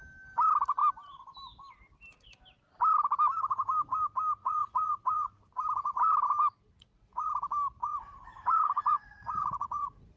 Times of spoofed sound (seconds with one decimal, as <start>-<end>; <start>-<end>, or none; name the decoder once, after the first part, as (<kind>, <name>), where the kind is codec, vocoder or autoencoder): 4.4-5.3 (vocoder, Vocos); 6.7-7.3; 7.8-10.2